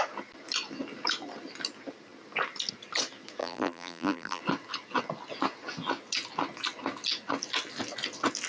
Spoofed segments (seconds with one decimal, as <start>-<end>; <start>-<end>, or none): 3.4-4.4